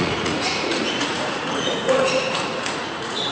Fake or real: fake